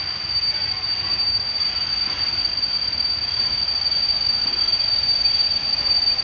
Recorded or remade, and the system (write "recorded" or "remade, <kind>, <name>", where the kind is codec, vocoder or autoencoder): recorded